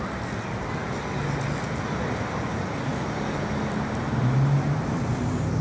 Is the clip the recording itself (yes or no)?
yes